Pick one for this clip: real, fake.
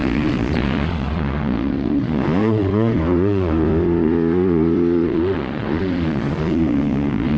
fake